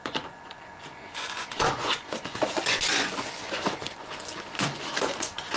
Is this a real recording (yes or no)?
no